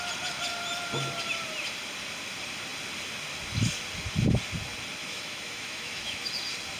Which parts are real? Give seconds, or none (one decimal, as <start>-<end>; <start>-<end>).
0.0-5.0; 6.3-6.8